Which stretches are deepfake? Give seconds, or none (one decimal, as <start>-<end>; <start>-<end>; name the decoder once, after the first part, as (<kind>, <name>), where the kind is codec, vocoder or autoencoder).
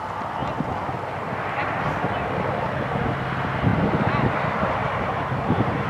4.8-5.9 (vocoder, BigVGAN v2)